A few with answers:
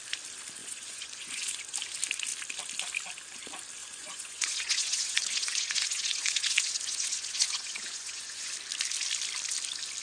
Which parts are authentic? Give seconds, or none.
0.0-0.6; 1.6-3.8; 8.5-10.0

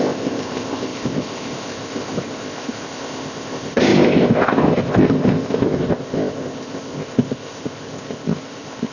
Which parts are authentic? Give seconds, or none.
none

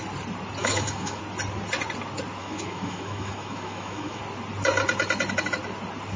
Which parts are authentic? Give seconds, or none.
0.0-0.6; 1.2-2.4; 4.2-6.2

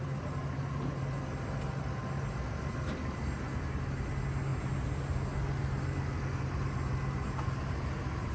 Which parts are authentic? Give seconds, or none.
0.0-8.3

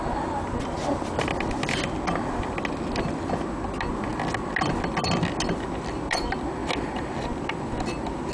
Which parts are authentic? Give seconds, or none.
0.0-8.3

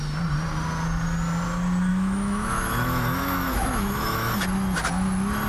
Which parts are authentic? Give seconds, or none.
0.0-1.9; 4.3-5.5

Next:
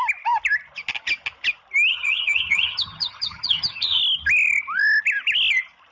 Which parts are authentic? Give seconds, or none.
0.0-1.9; 4.0-5.9